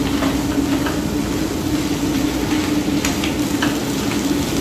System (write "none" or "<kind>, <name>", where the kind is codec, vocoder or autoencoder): none